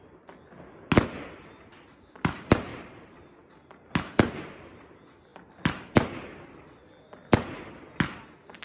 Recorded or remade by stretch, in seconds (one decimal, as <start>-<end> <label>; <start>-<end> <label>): 0.0-2.7 recorded; 2.7-3.8 remade; 3.8-8.6 recorded